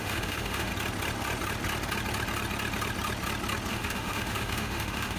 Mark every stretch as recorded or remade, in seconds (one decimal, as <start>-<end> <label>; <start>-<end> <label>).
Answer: 0.0-0.7 remade; 0.7-3.7 recorded; 3.7-5.2 remade